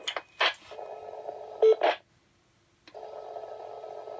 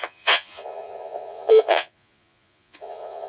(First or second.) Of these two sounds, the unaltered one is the first